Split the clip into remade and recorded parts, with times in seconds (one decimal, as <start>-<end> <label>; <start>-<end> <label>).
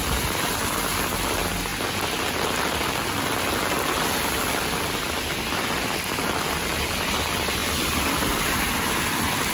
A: 0.0-9.5 recorded